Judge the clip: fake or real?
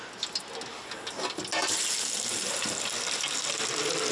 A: real